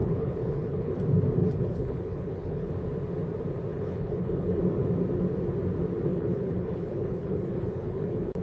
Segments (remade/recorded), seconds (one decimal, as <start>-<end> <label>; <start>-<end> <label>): 0.0-1.0 remade; 1.0-1.4 recorded; 1.4-2.7 remade; 2.7-3.7 recorded; 3.7-4.6 remade; 4.6-6.1 recorded; 6.1-8.4 remade